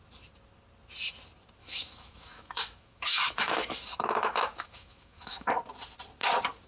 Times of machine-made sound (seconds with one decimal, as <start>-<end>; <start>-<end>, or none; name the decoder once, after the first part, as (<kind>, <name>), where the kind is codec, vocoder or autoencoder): 1.6-5.6 (autoencoder, DAC-VAE)